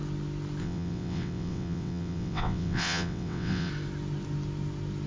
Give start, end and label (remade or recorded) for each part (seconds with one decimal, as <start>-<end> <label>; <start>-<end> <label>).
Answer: 0.0-0.6 recorded; 0.6-3.7 remade; 3.7-5.1 recorded